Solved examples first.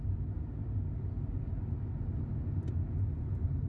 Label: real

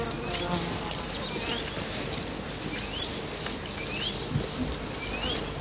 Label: real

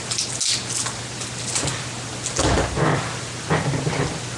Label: real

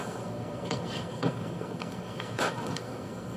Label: fake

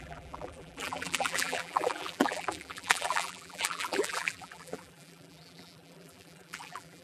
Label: fake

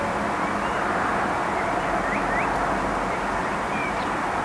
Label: real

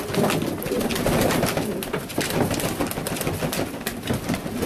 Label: real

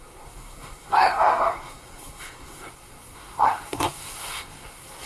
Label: fake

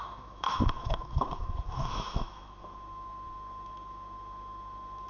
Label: fake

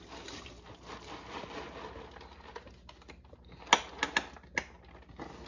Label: real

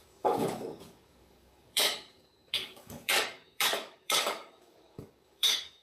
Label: fake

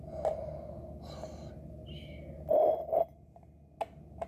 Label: real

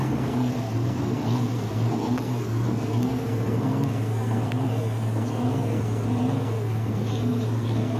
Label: fake